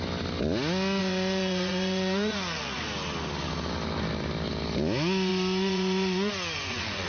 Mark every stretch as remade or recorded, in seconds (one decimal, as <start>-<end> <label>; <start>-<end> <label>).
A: 0.0-1.0 recorded; 1.0-2.8 remade; 2.8-5.3 recorded; 5.3-7.1 remade

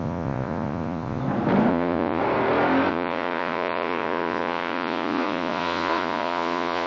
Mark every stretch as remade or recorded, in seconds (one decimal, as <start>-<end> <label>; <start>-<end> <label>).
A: 0.0-1.2 remade; 1.2-1.7 recorded; 1.7-2.2 remade; 2.2-2.9 recorded; 2.9-6.9 remade

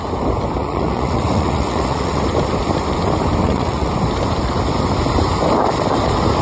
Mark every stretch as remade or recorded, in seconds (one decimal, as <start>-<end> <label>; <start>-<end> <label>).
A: 0.0-0.6 recorded; 0.6-2.2 remade; 2.2-3.4 recorded; 3.4-3.9 remade; 3.9-6.4 recorded

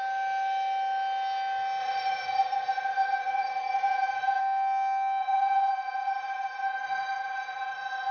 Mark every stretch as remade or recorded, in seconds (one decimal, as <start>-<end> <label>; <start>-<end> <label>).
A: 0.0-1.8 recorded; 1.8-4.4 remade; 4.4-5.2 recorded; 5.2-8.1 remade

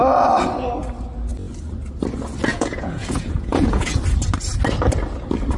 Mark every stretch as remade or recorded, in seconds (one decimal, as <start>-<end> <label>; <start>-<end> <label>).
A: 0.0-2.5 recorded; 2.5-4.0 remade; 4.0-5.6 recorded

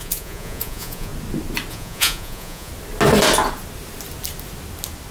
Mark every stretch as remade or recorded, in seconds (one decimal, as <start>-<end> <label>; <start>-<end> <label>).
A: 0.0-1.1 remade; 1.1-1.7 recorded; 1.7-2.7 remade; 2.7-5.1 recorded

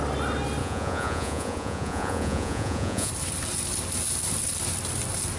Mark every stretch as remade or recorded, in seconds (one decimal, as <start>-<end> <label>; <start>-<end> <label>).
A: 0.0-0.6 recorded; 0.6-3.1 remade; 3.1-5.4 recorded